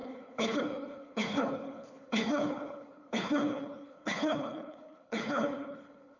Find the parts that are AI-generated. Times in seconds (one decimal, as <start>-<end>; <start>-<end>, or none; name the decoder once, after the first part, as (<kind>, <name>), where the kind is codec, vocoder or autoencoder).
0.0-6.2 (codec, HILCodec)